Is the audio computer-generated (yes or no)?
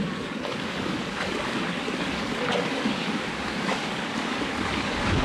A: yes